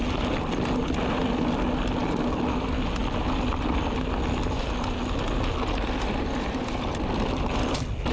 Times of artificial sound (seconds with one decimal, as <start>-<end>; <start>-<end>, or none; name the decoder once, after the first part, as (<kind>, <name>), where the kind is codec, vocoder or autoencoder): none